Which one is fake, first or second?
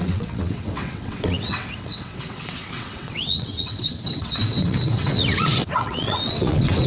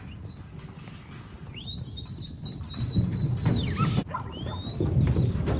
first